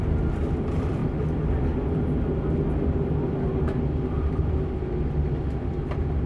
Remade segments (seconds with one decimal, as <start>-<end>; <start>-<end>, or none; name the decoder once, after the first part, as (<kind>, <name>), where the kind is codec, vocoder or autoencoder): none